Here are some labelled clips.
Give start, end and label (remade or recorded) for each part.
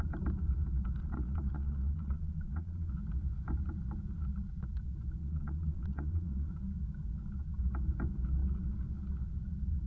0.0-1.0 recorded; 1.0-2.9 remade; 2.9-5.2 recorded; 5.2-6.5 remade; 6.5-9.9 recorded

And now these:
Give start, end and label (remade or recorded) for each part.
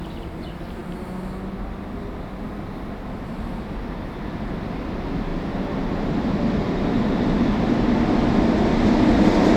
0.0-9.6 recorded